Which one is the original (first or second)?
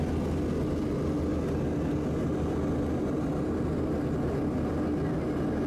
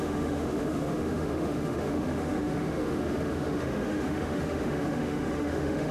first